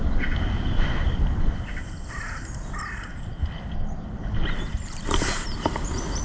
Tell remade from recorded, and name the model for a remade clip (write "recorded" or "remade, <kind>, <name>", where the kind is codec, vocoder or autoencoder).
recorded